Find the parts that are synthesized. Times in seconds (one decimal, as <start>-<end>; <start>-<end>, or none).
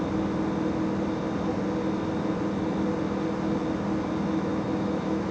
4.5-5.3